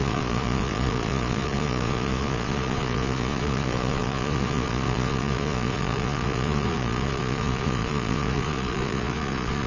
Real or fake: fake